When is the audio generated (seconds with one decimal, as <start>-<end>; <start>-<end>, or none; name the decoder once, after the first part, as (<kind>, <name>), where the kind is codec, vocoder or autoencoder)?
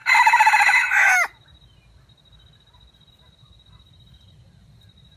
none